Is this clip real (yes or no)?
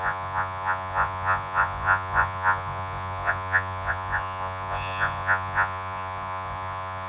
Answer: no